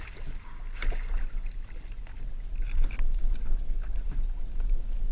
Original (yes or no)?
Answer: yes